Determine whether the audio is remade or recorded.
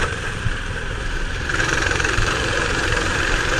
remade